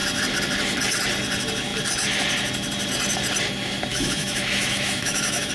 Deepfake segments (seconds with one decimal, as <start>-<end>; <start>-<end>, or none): 3.9-5.5